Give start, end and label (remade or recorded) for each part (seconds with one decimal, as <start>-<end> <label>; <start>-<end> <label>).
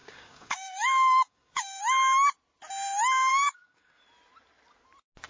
0.0-1.8 remade; 1.8-3.3 recorded; 3.3-4.0 remade; 4.0-5.3 recorded